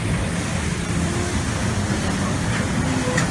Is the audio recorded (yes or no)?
yes